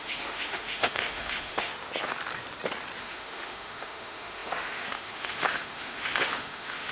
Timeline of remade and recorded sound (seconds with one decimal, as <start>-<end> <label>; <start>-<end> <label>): 0.0-1.7 remade; 1.7-3.0 recorded; 3.0-6.9 remade